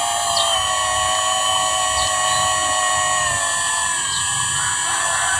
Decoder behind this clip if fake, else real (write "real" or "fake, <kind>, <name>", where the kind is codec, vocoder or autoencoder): real